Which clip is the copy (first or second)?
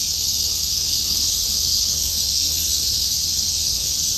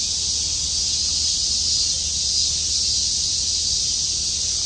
first